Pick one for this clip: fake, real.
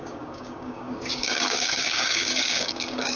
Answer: fake